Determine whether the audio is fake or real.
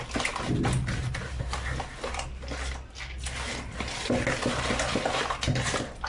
real